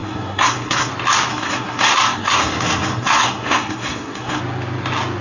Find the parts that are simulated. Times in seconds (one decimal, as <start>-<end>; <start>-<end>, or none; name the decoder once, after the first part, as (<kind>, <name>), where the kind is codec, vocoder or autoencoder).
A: 0.0-0.9 (codec, SNAC); 1.3-4.4